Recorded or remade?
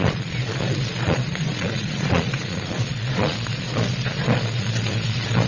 remade